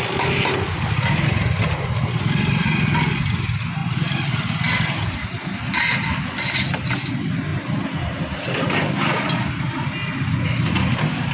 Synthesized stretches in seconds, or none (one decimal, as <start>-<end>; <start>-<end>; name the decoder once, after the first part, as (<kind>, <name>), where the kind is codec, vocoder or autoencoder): none